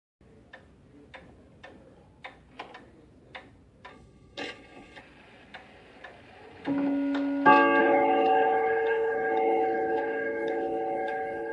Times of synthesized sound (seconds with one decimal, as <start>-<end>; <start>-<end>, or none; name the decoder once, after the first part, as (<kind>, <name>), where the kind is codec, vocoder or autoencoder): 3.9-5.0 (codec, HILCodec); 7.8-11.5